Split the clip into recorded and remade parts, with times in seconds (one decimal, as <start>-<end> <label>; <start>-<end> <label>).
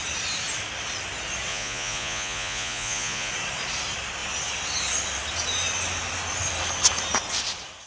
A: 0.0-1.5 recorded; 1.5-3.3 remade; 3.3-7.9 recorded